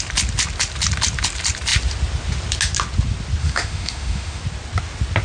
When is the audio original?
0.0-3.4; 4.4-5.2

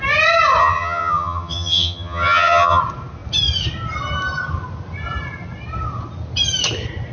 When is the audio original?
0.0-0.6; 2.8-7.1